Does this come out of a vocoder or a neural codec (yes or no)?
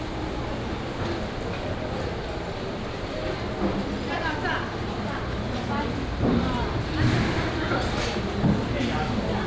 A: no